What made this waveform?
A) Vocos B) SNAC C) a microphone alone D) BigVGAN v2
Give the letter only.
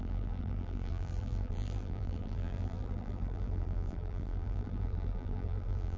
D